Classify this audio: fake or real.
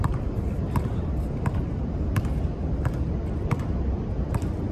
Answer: real